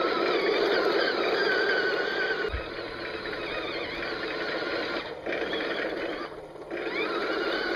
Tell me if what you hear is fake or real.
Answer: real